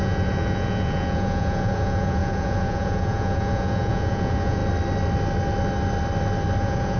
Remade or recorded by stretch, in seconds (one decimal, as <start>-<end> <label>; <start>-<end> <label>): 0.0-4.6 remade; 4.6-6.6 recorded; 6.6-7.0 remade